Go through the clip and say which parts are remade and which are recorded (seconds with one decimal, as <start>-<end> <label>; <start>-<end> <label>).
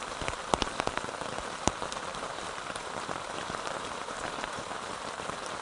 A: 0.0-2.1 recorded; 2.1-5.1 remade; 5.1-5.6 recorded